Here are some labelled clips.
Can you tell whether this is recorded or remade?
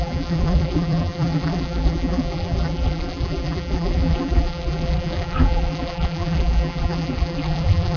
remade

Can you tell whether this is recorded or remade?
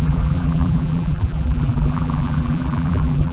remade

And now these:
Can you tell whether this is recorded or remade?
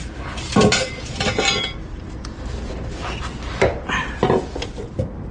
remade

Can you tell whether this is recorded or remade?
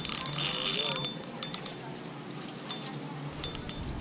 recorded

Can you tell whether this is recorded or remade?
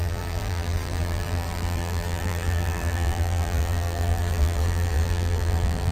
remade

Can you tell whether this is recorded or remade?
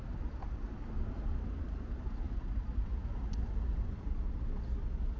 recorded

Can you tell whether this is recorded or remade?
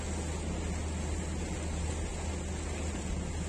recorded